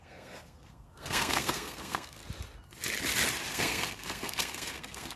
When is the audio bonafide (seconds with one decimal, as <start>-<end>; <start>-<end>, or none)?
2.2-3.5